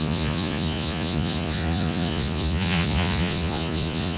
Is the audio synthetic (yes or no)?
yes